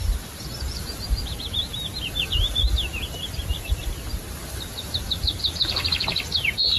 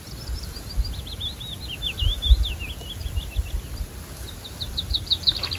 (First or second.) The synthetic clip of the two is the first